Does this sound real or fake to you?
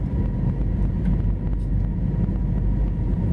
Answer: real